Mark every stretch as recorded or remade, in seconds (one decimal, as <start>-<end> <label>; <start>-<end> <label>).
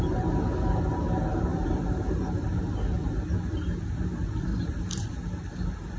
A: 0.0-1.5 recorded; 1.5-2.6 remade; 2.6-4.5 recorded; 4.5-6.0 remade